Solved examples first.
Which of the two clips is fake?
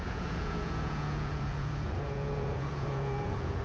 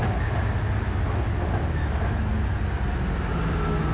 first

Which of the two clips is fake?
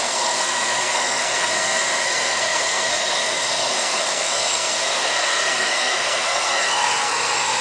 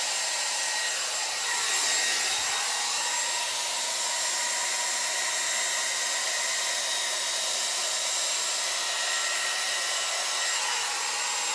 first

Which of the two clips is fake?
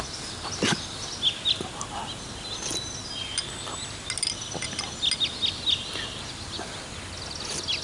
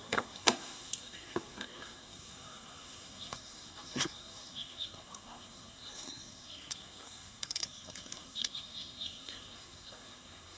second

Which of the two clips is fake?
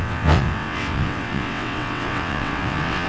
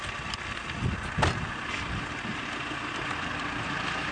first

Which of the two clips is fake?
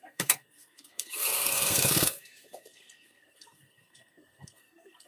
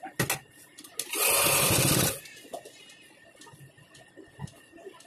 first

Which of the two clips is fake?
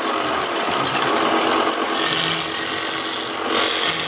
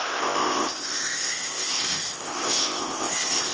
second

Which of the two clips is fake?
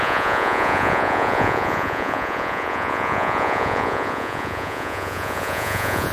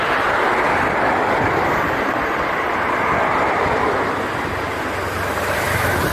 first